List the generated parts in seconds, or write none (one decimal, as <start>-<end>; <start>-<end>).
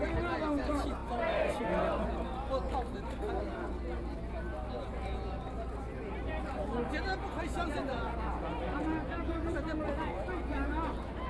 none